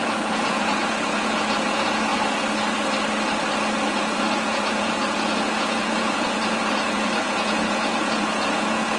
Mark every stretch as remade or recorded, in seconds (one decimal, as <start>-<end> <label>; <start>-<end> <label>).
0.0-2.1 remade; 2.1-3.9 recorded; 3.9-9.0 remade